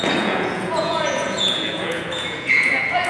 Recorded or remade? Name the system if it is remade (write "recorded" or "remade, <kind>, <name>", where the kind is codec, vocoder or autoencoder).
remade, vocoder, Vocos